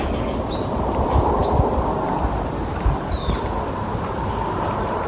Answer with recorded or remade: recorded